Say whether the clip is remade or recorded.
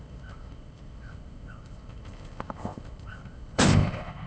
remade